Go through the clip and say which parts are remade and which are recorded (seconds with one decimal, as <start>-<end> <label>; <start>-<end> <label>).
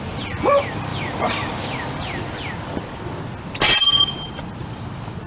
0.0-5.3 recorded